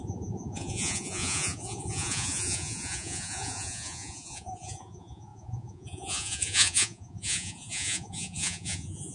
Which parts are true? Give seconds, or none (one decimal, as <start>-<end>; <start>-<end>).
none